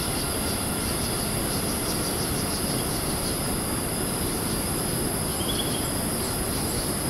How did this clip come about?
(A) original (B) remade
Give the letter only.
A